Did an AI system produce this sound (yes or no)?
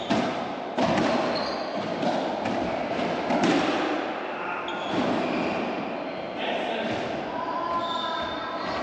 no